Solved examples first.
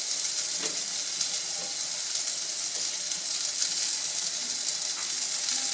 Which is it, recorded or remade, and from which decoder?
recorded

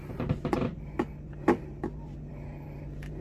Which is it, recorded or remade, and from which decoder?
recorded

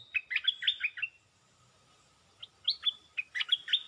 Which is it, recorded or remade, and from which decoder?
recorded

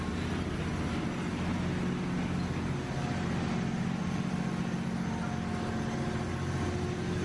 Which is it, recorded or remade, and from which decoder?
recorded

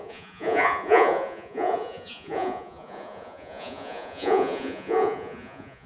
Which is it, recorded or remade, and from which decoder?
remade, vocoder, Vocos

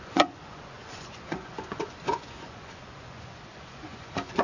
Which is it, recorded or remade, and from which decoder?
remade, vocoder, Vocos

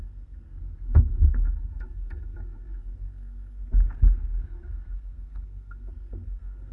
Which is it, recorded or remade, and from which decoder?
remade, codec, SNAC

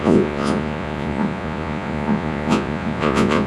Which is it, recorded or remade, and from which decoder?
remade, vocoder, Vocos